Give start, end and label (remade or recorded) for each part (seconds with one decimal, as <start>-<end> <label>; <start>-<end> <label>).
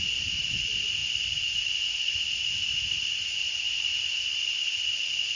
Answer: 0.0-1.0 recorded; 1.0-4.2 remade; 4.2-5.3 recorded